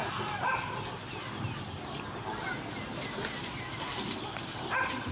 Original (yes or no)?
yes